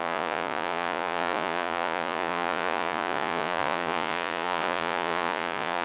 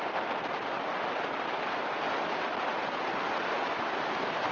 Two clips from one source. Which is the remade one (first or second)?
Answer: first